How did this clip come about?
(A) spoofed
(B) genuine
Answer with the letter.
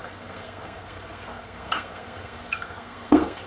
A